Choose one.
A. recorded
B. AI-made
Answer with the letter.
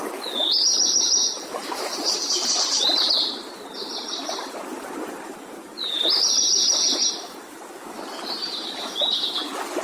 A